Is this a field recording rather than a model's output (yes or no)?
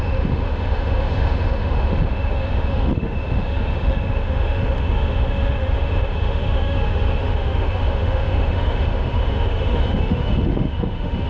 no